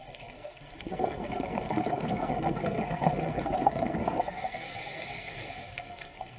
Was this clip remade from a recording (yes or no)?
yes